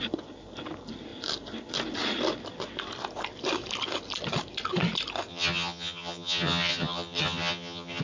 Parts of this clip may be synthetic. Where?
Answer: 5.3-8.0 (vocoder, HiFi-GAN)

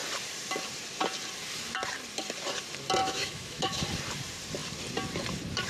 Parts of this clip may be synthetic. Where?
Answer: 3.0-3.8 (autoencoder, DAC-VAE)

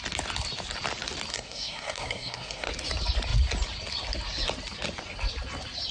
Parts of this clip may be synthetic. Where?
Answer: 1.3-2.7 (codec, SNAC)

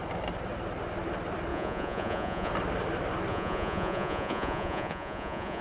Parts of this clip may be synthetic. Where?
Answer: 1.5-2.5 (vocoder, Vocos); 3.3-5.6

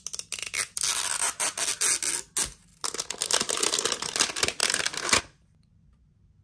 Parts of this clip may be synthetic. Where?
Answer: none

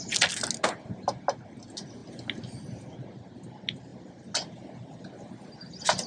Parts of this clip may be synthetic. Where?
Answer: none

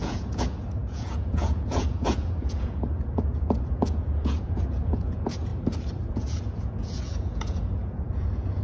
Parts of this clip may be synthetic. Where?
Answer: 0.0-5.5 (vocoder, Vocos); 6.1-8.6